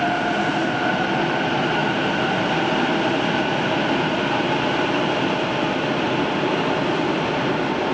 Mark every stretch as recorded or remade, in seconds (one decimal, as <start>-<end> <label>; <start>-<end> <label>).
0.0-7.9 recorded